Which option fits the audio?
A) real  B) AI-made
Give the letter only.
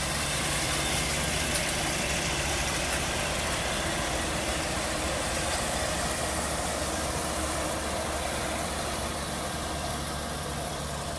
B